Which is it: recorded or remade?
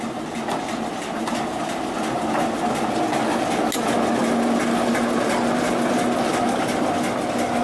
recorded